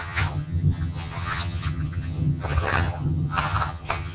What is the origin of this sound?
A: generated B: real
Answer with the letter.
A